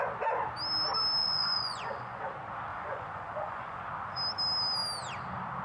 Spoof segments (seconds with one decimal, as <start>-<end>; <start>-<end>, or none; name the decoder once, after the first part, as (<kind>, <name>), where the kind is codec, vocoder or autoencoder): 1.2-2.2 (vocoder, Vocos); 2.7-3.8

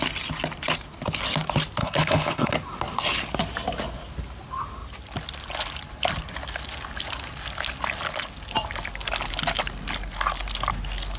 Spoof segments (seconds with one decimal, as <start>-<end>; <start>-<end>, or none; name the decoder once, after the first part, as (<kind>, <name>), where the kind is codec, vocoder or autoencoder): 1.8-2.5 (codec, HILCodec)

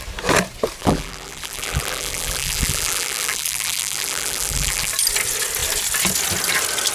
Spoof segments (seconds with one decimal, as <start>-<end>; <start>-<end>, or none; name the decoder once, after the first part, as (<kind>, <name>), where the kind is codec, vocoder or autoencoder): 0.8-4.9 (vocoder, BigVGAN v2)

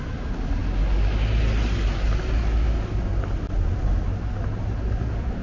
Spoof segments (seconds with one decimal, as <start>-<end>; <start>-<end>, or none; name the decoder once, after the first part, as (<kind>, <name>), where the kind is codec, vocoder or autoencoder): none

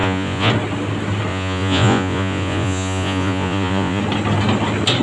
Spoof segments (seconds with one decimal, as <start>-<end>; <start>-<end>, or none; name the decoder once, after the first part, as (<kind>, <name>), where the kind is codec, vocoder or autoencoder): 0.0-0.5 (vocoder, Vocos); 1.3-4.0

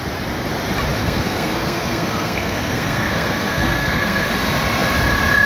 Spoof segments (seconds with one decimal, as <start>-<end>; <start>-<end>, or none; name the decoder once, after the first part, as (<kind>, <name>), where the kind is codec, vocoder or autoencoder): 1.0-4.3 (codec, SNAC)

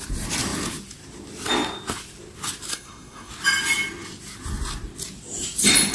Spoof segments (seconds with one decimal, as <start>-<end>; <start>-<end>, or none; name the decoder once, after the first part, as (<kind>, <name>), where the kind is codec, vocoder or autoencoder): 2.7-3.3 (codec, SNAC)